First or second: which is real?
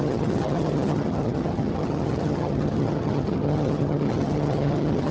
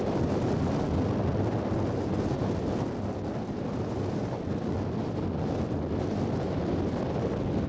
second